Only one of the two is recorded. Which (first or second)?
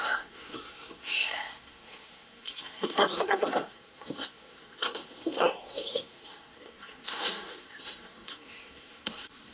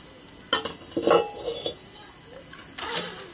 second